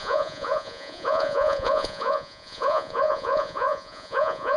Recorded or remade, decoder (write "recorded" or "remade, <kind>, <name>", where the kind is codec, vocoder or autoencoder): remade, vocoder, Vocos